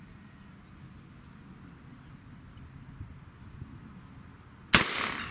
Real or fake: real